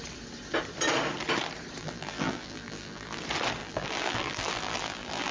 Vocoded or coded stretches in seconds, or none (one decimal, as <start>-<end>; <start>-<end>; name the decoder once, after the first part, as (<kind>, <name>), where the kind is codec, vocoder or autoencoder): 1.8-3.2 (vocoder, BigVGAN v2); 3.6-5.3